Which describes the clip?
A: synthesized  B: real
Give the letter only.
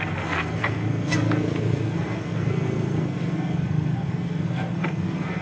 A